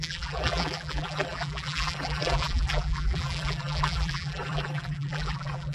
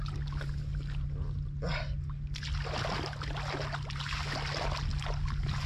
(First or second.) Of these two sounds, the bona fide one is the second